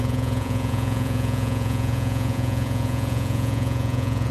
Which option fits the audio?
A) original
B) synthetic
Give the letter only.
B